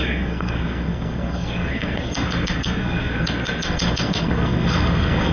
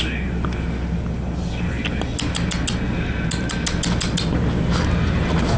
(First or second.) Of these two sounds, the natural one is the second